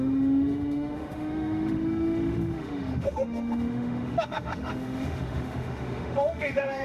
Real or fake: fake